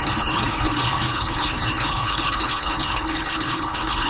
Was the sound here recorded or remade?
remade